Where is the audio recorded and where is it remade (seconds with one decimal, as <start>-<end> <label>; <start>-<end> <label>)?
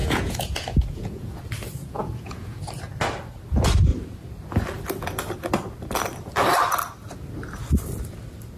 0.0-1.4 remade; 1.4-1.8 recorded; 1.8-2.6 remade; 2.6-8.6 recorded